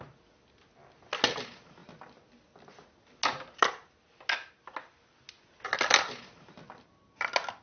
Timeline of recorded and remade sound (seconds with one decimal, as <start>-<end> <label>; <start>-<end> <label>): 0.0-7.6 recorded